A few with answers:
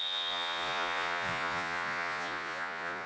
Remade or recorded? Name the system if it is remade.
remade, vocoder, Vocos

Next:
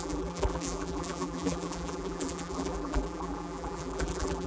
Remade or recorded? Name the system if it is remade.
remade, vocoder, BigVGAN v2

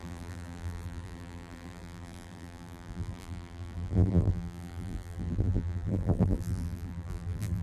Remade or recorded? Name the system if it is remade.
remade, vocoder, BigVGAN v2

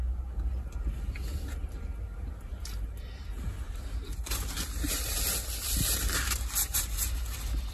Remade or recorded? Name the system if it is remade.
recorded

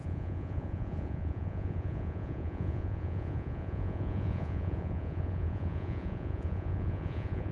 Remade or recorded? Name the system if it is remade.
remade, vocoder, Vocos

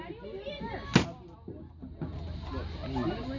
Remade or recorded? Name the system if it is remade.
recorded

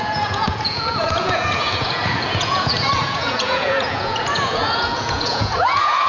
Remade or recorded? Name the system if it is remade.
remade, vocoder, Vocos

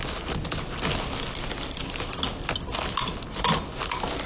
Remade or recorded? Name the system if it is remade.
recorded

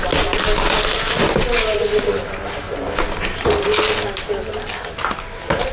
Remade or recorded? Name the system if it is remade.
recorded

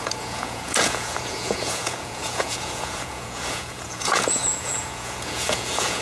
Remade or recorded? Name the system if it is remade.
remade, vocoder, Vocos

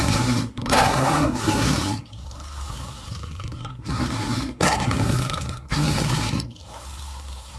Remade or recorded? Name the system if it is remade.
remade, codec, SNAC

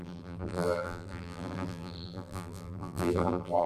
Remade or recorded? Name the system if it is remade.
remade, vocoder, BigVGAN v2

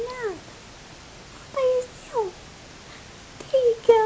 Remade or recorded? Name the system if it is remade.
recorded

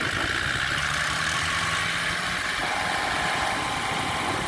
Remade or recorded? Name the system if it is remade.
recorded